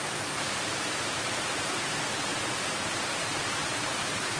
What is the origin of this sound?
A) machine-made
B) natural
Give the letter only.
A